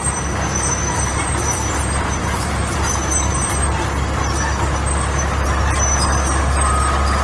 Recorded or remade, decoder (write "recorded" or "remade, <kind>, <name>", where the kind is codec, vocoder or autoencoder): recorded